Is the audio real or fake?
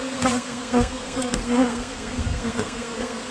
fake